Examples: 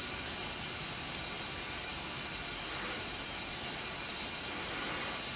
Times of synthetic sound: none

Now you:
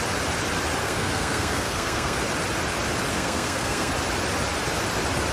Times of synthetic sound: 0.8-2.2 (codec, SNAC); 3.1-3.9